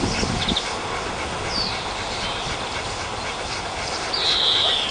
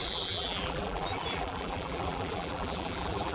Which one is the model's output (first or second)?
second